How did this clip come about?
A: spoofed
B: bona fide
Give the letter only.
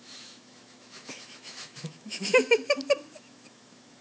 A